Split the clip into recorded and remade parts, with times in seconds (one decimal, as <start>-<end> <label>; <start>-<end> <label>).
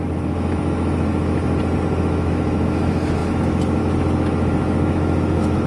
0.0-1.4 remade; 1.4-2.0 recorded; 2.0-5.7 remade